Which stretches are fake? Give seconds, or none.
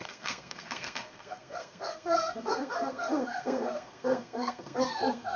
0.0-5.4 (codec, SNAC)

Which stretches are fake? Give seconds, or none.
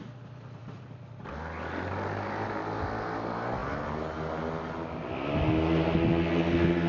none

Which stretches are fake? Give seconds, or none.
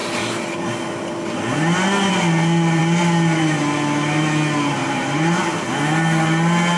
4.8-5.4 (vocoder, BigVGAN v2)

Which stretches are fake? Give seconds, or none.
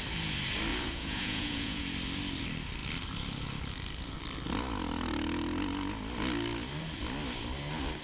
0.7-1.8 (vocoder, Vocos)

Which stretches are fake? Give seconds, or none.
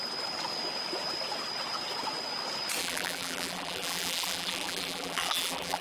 2.8-5.8 (vocoder, BigVGAN v2)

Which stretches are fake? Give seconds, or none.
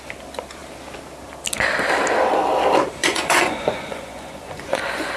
3.0-5.2 (vocoder, Vocos)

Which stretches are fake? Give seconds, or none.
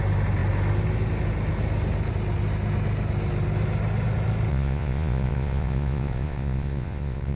4.5-7.4 (vocoder, Vocos)